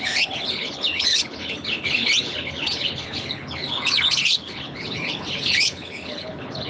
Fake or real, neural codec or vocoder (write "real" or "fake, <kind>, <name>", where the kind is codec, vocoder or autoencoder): fake, codec, HILCodec